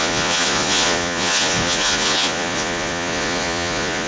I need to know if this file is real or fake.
fake